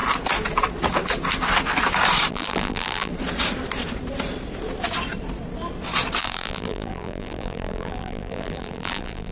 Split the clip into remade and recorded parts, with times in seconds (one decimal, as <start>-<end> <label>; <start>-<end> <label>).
0.0-2.3 recorded; 2.3-3.1 remade; 3.1-6.2 recorded; 6.2-9.3 remade